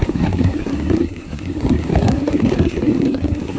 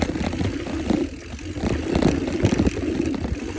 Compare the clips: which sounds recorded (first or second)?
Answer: second